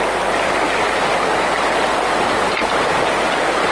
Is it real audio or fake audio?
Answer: real